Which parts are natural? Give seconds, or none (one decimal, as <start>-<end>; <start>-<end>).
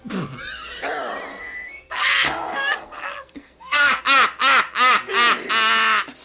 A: 0.0-1.3; 4.0-6.2